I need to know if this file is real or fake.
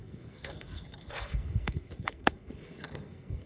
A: fake